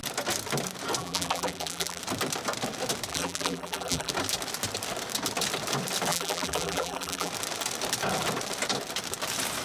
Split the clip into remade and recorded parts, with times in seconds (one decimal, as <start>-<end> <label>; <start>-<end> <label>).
0.0-1.0 recorded; 1.0-2.0 remade; 2.0-3.1 recorded; 3.1-4.1 remade; 4.1-6.1 recorded; 6.1-7.3 remade; 7.3-9.6 recorded